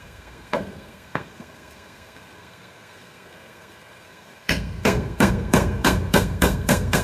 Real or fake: fake